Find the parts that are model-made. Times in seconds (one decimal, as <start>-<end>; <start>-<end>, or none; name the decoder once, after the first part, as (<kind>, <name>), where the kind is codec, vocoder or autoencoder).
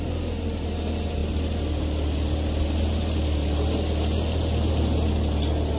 none